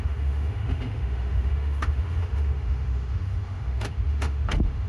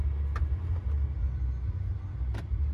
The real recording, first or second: second